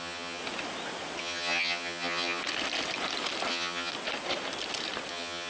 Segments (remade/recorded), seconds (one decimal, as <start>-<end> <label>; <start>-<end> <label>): 0.0-0.4 remade; 0.4-1.2 recorded; 1.2-2.4 remade; 2.4-3.5 recorded; 3.5-3.9 remade; 3.9-5.1 recorded; 5.1-5.5 remade